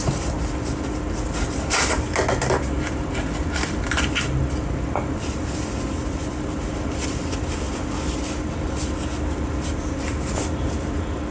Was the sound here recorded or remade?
recorded